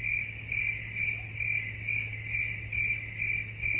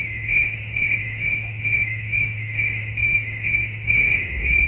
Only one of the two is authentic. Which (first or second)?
first